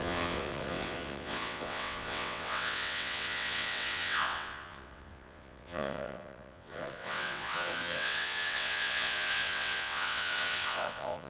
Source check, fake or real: fake